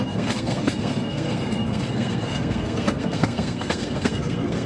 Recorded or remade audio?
remade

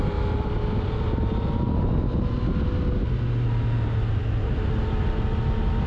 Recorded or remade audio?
recorded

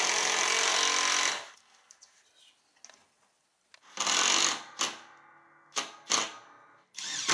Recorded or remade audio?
recorded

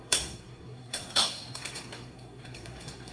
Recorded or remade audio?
remade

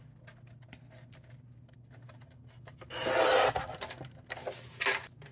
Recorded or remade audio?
recorded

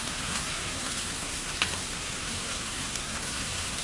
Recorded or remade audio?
remade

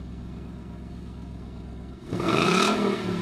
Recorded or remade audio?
remade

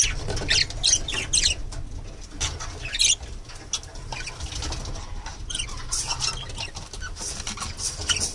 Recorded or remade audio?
recorded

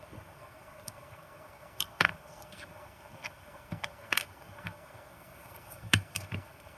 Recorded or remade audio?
remade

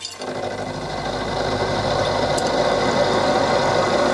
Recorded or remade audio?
recorded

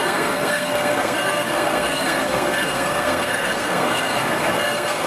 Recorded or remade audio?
remade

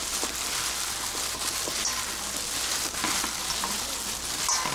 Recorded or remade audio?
recorded